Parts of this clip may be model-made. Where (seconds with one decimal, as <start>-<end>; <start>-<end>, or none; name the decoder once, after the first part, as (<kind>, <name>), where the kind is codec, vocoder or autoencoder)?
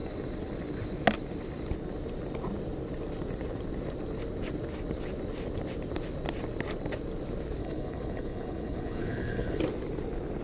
7.6-9.6 (codec, HILCodec)